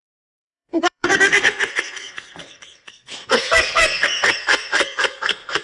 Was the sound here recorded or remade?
remade